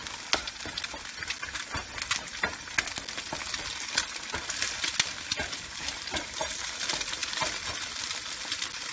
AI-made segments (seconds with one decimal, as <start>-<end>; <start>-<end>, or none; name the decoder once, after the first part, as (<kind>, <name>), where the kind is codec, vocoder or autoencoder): none